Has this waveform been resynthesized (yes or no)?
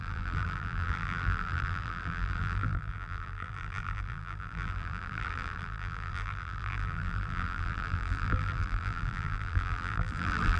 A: yes